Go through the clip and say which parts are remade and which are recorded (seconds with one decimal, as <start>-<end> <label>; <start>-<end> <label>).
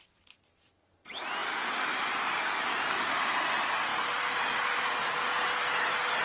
0.0-6.2 recorded